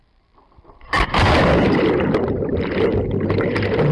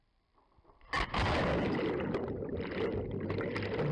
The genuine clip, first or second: second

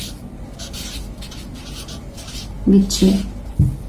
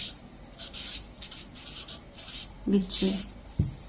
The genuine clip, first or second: first